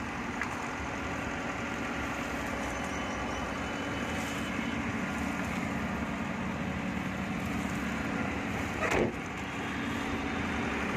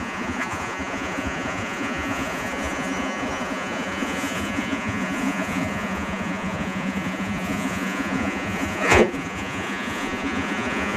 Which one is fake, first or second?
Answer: second